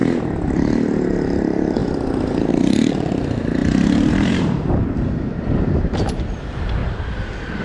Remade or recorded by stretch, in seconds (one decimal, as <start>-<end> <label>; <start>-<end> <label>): 0.0-1.1 recorded; 1.1-1.8 remade; 1.8-2.5 recorded; 2.5-7.6 remade